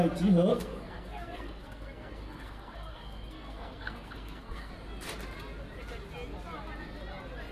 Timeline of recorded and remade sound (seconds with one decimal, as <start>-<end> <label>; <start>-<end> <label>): 0.0-0.5 recorded; 0.5-4.7 remade; 4.7-7.5 recorded